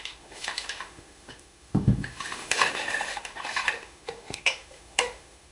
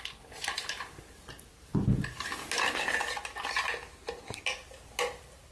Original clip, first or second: second